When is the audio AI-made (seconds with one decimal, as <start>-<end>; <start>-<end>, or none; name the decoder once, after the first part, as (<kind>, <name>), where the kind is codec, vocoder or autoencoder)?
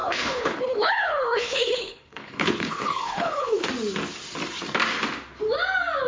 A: 0.0-3.7 (codec, HILCodec)